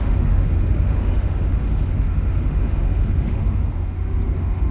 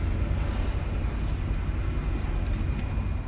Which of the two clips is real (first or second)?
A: second